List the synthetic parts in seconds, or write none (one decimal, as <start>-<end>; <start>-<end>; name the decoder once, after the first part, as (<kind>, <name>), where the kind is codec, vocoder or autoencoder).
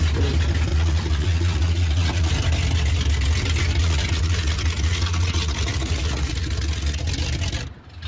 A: 0.7-2.3 (vocoder, Vocos); 3.8-7.0